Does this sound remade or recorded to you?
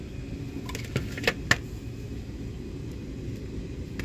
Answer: recorded